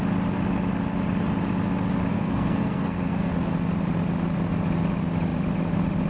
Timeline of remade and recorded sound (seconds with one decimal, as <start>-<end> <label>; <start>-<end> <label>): 0.0-2.1 recorded; 2.1-3.3 remade; 3.3-6.1 recorded